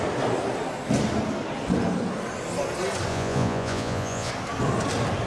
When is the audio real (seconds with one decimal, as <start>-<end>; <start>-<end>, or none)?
0.0-3.1; 4.3-5.3